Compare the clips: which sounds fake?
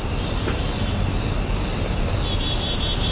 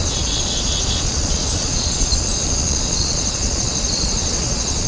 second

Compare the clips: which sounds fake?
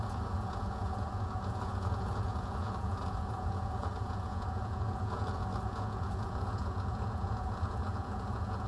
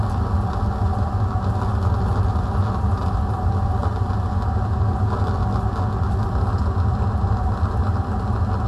first